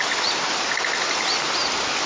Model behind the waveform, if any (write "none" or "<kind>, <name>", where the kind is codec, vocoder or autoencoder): none